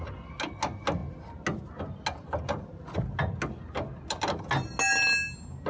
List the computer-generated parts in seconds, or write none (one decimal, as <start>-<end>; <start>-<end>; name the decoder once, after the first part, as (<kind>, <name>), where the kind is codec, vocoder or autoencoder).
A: none